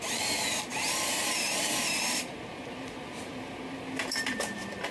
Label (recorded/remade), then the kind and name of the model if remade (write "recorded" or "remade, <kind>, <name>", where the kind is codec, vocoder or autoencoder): remade, vocoder, BigVGAN v2